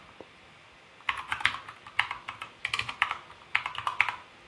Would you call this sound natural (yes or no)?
yes